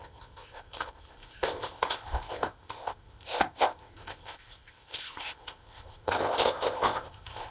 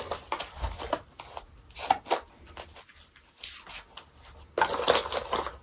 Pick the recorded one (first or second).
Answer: second